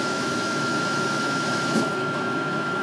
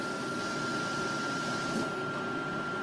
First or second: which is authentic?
second